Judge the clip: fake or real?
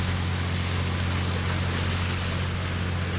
real